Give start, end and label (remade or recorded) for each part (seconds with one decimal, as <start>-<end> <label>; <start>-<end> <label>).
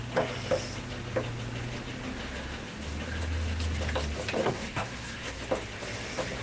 0.0-4.4 recorded; 4.4-5.4 remade; 5.4-6.4 recorded